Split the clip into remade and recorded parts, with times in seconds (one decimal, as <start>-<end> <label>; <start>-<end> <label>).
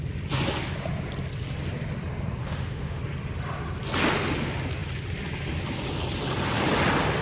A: 0.0-2.4 recorded; 2.4-3.0 remade; 3.0-7.2 recorded